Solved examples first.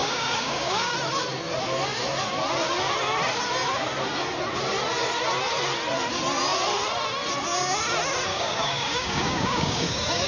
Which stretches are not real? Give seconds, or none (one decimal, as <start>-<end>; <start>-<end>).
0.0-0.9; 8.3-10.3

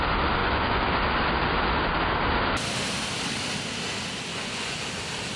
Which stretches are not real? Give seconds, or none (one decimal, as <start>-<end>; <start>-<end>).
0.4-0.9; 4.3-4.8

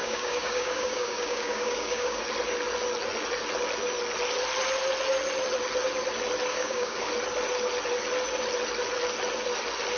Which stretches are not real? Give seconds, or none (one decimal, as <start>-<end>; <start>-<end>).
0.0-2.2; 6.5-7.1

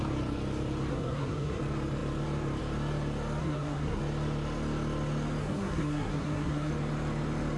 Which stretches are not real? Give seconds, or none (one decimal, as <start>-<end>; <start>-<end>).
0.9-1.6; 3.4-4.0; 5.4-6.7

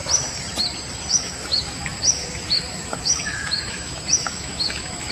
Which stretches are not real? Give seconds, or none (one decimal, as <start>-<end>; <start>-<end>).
1.1-5.1

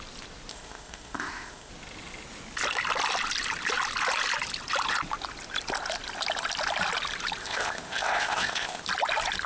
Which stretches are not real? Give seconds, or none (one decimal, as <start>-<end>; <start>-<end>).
0.5-1.7; 7.4-8.8

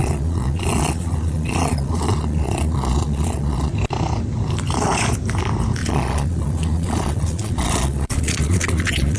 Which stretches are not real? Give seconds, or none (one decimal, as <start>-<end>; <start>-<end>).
0.0-3.7; 5.8-9.2

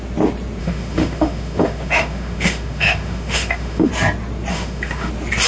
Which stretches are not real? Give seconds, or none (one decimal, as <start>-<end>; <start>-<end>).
0.6-3.9; 4.5-5.1